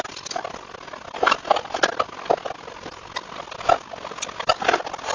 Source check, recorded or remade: recorded